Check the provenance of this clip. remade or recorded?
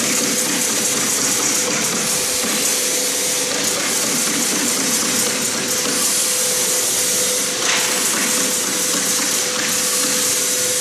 recorded